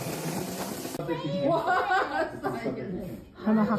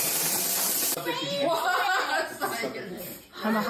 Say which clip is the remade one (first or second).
second